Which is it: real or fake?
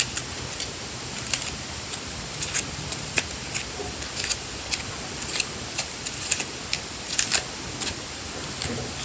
real